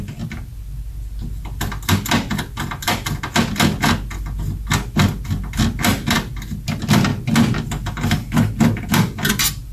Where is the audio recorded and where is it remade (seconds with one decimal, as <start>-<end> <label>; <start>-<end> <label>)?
0.0-9.7 recorded